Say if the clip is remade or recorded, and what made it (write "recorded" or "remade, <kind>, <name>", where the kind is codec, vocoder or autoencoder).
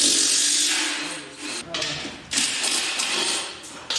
recorded